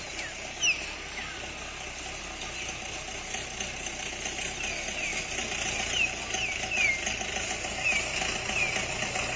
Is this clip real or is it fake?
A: real